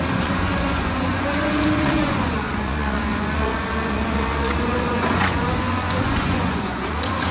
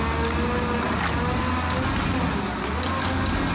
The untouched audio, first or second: second